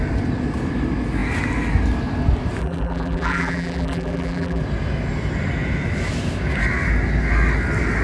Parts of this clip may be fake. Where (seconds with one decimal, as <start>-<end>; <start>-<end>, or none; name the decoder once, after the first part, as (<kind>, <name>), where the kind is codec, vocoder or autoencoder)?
2.6-4.6 (vocoder, BigVGAN v2)